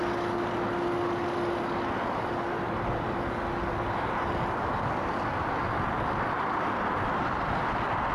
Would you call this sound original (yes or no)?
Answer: yes